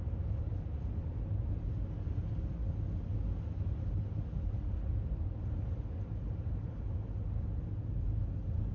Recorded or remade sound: recorded